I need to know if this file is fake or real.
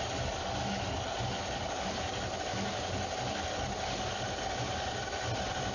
real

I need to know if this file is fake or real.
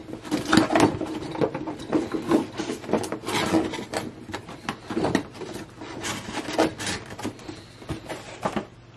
real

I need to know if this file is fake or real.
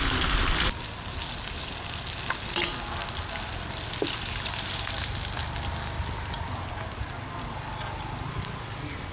real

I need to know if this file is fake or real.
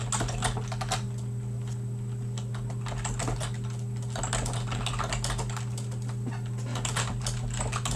real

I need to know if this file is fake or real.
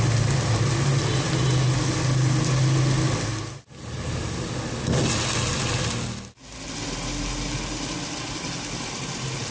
real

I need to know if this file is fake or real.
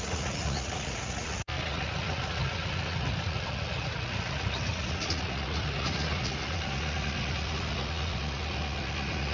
fake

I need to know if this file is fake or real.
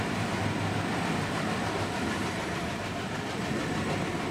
fake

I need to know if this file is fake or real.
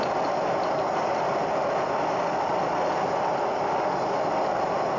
real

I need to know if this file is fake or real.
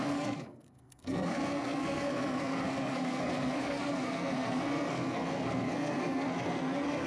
fake